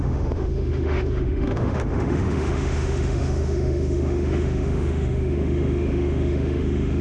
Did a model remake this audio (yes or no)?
yes